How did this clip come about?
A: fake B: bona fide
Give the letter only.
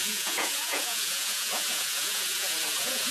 A